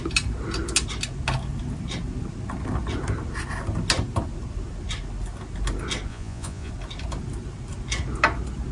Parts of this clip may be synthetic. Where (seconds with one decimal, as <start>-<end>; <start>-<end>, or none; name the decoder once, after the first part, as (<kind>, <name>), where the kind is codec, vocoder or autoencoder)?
6.1-6.7 (vocoder, Vocos)